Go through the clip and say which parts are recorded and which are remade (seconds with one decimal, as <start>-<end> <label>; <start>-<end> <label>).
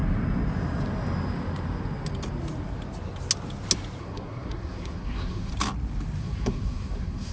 0.0-4.0 recorded; 4.0-5.5 remade; 5.5-6.2 recorded; 6.2-7.3 remade